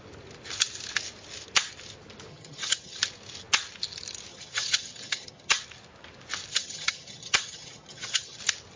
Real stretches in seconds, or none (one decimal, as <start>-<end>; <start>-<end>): 0.0-2.3; 3.0-4.3; 5.6-6.5; 8.4-8.8